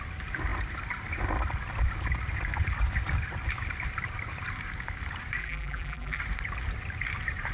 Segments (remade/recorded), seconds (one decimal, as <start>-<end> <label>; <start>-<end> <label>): 0.0-5.4 recorded; 5.4-6.2 remade; 6.2-7.5 recorded